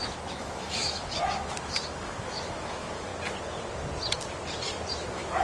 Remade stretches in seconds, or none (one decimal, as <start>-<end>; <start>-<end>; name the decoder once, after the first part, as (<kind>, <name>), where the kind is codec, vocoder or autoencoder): 0.0-3.1 (autoencoder, DAC-VAE); 4.9-5.4